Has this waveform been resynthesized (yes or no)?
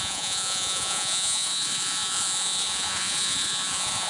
yes